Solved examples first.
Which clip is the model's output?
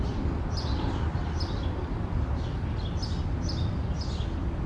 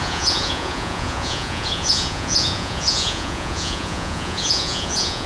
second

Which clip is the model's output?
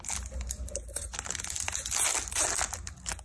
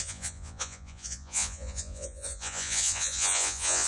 second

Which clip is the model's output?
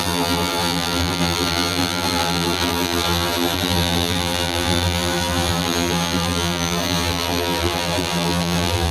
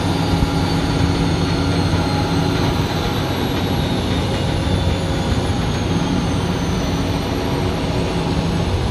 first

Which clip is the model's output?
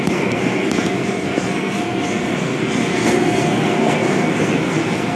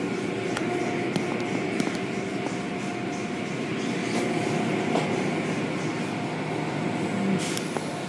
first